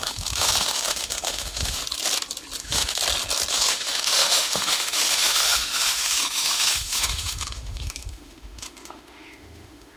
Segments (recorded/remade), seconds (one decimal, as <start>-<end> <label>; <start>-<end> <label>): 0.0-1.8 remade; 1.8-2.6 recorded; 2.6-3.0 remade; 3.0-3.5 recorded; 3.5-10.0 remade